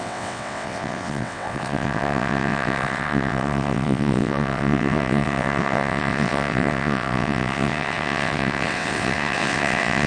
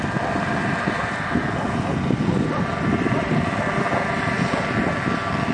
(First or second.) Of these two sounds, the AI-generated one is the first